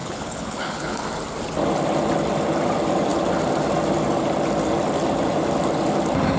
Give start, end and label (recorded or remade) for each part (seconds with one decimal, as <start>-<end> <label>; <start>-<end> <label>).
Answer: 0.0-1.0 remade; 1.0-6.4 recorded